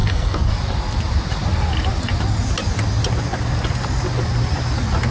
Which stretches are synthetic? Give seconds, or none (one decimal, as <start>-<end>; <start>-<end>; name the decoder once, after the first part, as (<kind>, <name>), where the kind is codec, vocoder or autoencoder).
0.0-0.5 (codec, SNAC)